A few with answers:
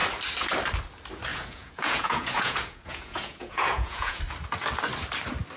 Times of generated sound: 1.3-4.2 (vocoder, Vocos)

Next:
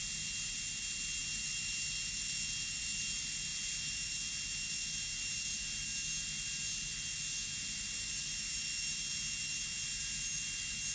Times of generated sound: none

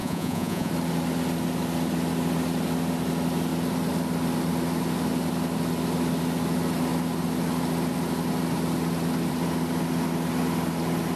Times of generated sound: 0.0-0.7 (vocoder, Vocos)

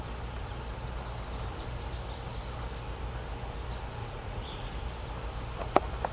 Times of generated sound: 4.0-4.8 (vocoder, Vocos)

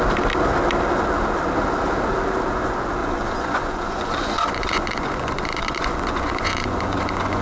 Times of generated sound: 3.0-7.4 (vocoder, Vocos)